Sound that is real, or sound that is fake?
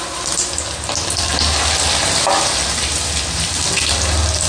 real